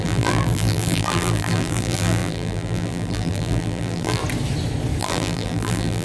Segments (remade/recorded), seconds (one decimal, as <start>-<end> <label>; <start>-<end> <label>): 0.0-4.2 remade; 4.2-5.0 recorded; 5.0-6.0 remade